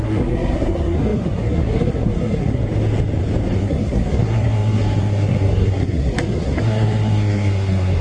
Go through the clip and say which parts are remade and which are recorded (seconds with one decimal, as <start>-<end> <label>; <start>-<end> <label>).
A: 0.0-2.6 remade; 2.6-3.6 recorded; 3.6-8.0 remade

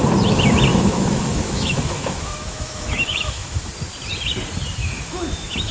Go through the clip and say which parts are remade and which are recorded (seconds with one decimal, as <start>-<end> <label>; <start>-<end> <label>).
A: 0.0-0.7 recorded; 0.7-3.7 remade; 3.7-4.8 recorded; 4.8-5.7 remade

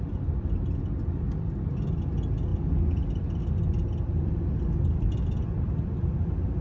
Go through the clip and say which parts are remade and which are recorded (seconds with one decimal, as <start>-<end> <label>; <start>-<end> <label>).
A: 0.0-6.6 recorded

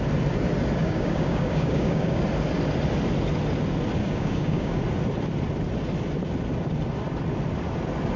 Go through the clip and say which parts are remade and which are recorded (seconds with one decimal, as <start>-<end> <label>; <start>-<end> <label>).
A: 0.0-0.8 recorded; 0.8-2.2 remade; 2.2-4.0 recorded; 4.0-4.8 remade; 4.8-8.2 recorded

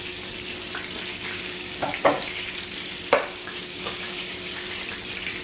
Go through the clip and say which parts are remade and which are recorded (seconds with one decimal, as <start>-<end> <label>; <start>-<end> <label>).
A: 0.0-1.1 recorded; 1.1-2.4 remade; 2.4-3.4 recorded; 3.4-4.7 remade; 4.7-5.4 recorded

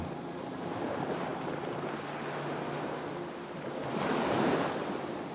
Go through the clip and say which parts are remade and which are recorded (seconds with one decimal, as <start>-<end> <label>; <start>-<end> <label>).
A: 0.0-5.3 recorded

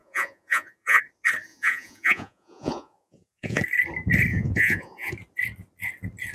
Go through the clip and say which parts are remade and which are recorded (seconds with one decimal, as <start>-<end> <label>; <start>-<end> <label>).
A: 0.0-1.0 remade; 1.0-1.5 recorded; 1.5-3.6 remade; 3.6-4.3 recorded; 4.3-5.1 remade; 5.1-6.3 recorded

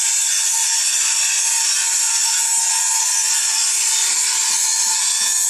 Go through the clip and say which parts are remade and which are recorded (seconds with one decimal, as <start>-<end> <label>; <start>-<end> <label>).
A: 0.0-5.5 recorded